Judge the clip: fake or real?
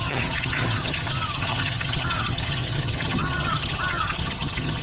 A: fake